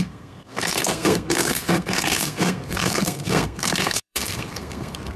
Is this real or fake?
fake